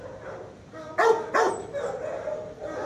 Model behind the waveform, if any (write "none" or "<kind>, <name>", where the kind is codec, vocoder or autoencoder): none